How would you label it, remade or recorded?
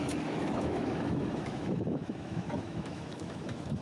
remade